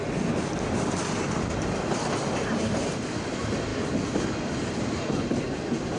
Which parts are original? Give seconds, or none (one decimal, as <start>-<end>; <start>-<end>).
0.0-6.0